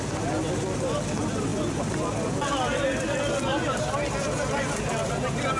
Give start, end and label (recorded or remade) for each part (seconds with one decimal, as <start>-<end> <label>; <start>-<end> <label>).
0.0-5.6 recorded